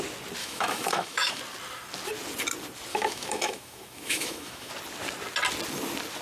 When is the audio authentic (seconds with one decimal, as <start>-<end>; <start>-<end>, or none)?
0.0-0.4; 1.4-2.9; 4.7-6.2